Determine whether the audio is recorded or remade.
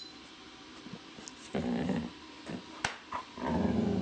recorded